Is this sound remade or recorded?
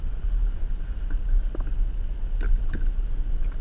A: recorded